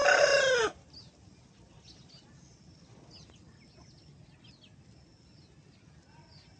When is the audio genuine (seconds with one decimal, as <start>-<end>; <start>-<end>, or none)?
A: 0.0-6.6